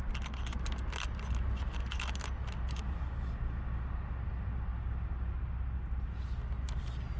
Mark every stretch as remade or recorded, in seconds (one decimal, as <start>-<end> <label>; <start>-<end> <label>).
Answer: 0.0-7.2 recorded